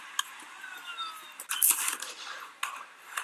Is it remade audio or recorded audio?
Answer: recorded